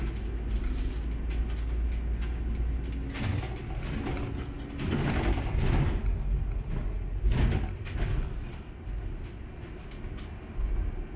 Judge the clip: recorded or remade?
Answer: recorded